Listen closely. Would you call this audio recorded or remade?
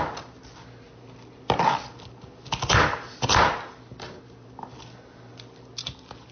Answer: recorded